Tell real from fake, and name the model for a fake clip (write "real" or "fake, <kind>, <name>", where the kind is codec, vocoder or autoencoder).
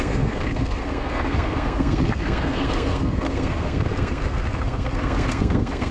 fake, codec, SNAC